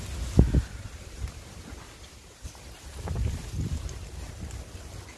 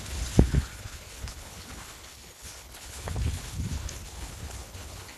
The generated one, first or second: second